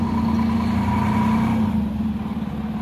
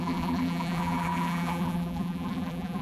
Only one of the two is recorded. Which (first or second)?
first